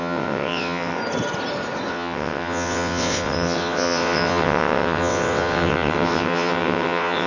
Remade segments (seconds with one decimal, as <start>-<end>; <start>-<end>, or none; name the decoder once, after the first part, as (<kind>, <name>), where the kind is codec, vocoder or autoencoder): 0.0-1.0 (vocoder, WaveNeXt); 1.9-7.3